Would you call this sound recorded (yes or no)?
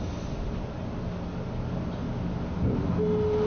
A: yes